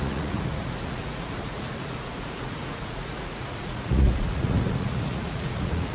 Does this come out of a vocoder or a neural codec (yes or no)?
yes